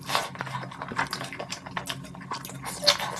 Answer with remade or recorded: recorded